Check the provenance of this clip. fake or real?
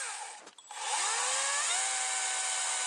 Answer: real